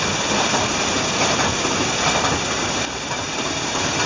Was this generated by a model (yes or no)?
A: no